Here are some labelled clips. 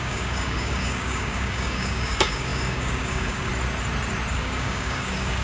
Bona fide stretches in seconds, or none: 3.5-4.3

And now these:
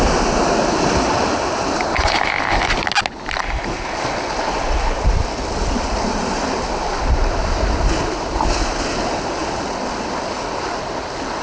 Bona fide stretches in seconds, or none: 0.0-11.4

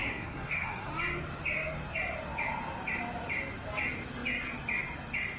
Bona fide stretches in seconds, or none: 0.9-5.4